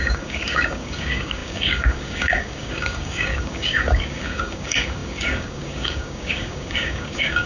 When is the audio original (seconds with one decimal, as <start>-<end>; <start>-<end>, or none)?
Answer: none